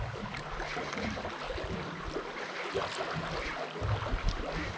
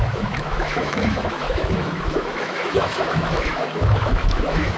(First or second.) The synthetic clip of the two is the second